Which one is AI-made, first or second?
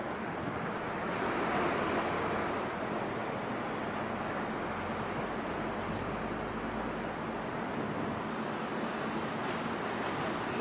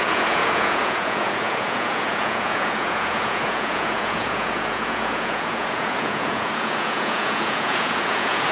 second